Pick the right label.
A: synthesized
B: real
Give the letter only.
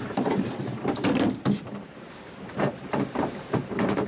A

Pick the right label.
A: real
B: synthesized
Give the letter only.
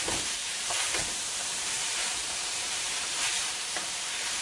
B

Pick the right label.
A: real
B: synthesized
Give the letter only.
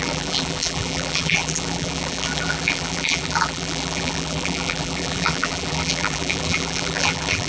B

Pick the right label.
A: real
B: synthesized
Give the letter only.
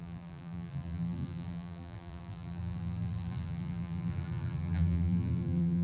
B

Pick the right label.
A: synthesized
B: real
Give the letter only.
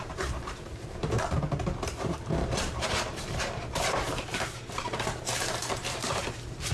A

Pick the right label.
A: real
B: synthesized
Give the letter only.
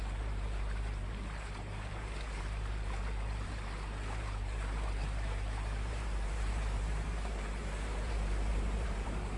B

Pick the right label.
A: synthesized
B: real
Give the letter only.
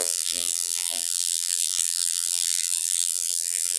A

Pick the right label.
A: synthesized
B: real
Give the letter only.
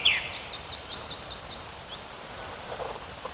A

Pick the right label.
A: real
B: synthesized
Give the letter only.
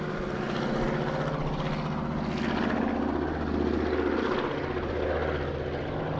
A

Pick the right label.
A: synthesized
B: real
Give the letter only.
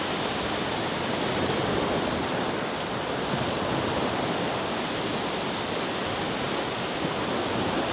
A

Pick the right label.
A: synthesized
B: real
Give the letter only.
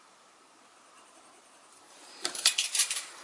A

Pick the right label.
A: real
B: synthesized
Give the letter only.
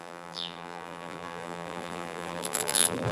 B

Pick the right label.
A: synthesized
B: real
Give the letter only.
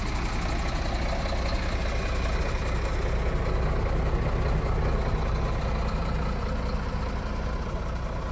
B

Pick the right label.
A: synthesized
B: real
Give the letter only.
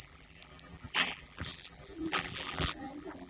A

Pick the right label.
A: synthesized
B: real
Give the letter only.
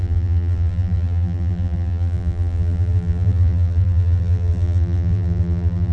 A